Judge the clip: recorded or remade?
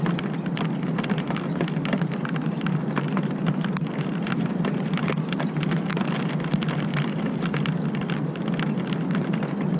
recorded